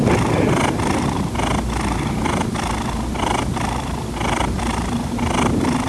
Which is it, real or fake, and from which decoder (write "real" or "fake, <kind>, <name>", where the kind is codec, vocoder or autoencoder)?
real